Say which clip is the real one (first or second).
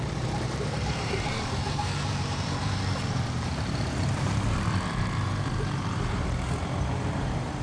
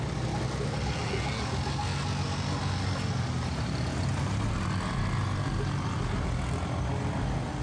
second